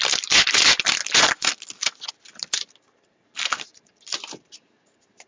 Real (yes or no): yes